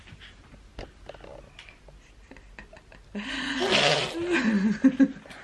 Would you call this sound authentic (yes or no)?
yes